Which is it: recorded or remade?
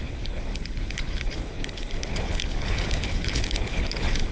remade